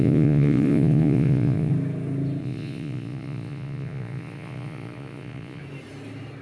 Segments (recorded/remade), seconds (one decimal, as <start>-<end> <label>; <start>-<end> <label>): 0.0-1.7 remade; 1.7-2.4 recorded; 2.4-5.6 remade; 5.6-6.4 recorded